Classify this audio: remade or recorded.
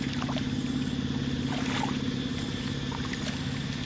recorded